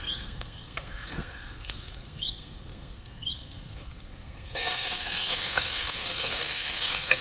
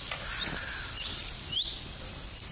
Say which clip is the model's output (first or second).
first